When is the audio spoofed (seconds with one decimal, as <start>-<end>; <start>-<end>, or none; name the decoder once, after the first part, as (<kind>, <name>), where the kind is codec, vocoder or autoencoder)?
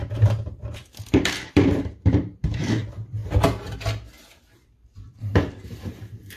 0.0-3.2 (vocoder, BigVGAN v2); 4.4-6.4